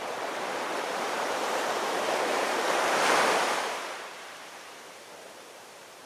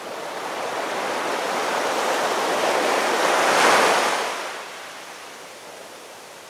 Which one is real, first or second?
second